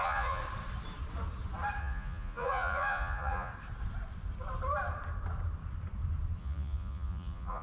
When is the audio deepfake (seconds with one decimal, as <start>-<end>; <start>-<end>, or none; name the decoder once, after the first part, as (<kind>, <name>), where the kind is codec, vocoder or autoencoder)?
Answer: 0.0-0.4 (vocoder, Vocos); 1.8-3.5; 6.4-7.6